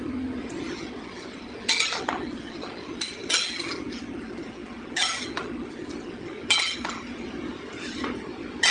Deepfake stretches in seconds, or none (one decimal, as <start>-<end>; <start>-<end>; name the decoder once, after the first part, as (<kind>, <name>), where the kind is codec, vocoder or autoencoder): none